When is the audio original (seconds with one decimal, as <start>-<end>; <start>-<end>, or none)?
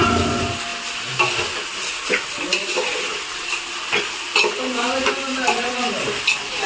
0.0-6.7